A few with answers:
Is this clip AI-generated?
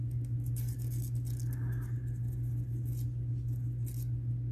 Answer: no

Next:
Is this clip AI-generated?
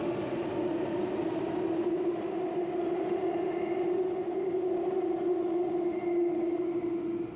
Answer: no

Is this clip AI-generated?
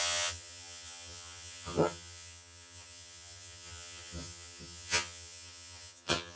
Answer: yes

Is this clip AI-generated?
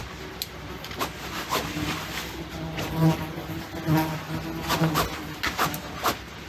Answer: no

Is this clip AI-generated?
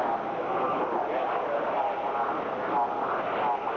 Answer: no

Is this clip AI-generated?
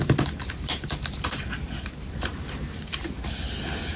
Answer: no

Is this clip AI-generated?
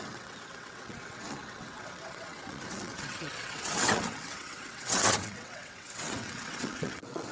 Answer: yes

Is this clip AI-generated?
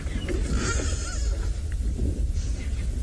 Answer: no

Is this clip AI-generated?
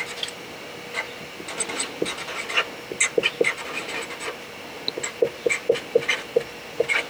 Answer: no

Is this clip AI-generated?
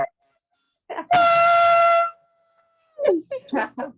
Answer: no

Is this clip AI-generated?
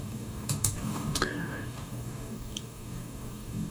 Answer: yes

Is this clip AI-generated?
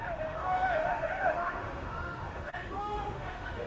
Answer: yes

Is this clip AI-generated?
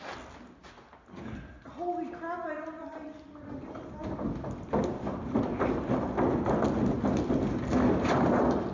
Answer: no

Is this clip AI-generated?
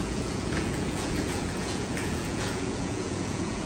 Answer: yes